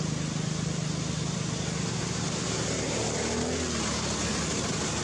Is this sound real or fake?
real